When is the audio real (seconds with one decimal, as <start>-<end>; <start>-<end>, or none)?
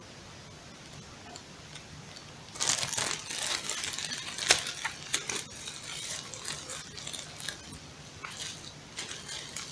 0.0-5.1; 6.5-9.7